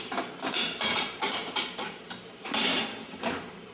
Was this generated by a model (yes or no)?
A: yes